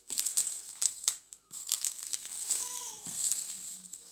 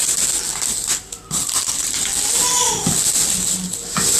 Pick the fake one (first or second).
first